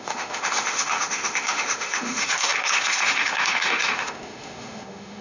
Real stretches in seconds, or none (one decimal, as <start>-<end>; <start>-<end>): none